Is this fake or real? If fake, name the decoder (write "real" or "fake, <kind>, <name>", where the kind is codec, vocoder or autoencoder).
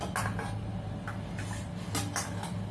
real